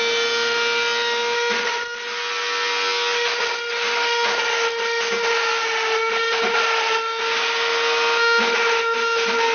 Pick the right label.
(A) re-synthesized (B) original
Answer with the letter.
B